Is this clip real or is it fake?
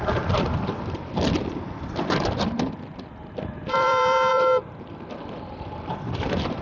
fake